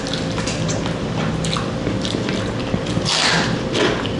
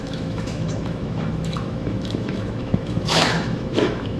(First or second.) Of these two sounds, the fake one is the second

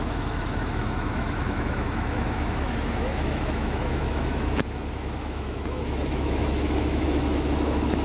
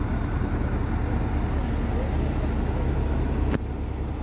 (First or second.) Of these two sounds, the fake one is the first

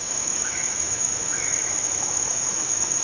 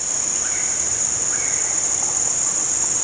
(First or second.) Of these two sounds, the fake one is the first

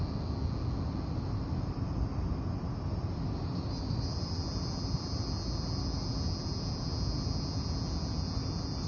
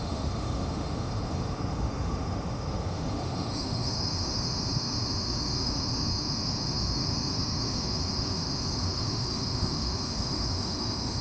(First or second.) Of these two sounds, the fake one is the second